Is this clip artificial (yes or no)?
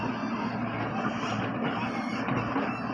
no